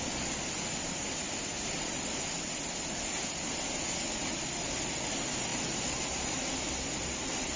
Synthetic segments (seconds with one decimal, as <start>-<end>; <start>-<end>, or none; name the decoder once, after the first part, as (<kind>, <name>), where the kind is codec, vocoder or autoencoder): none